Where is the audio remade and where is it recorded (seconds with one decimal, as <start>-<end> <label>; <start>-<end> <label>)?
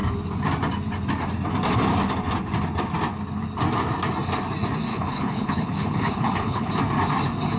0.0-4.9 recorded; 4.9-6.7 remade; 6.7-7.6 recorded